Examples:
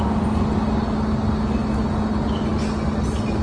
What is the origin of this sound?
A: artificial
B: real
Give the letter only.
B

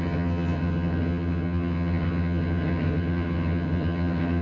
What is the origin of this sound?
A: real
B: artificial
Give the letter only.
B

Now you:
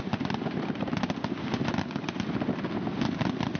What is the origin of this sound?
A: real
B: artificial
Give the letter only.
A